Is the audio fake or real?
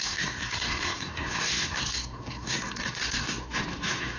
fake